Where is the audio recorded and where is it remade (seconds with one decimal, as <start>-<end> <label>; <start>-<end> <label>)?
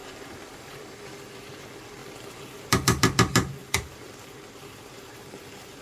0.0-0.8 remade; 0.8-2.0 recorded; 2.0-2.7 remade; 2.7-3.6 recorded; 3.6-5.2 remade; 5.2-5.8 recorded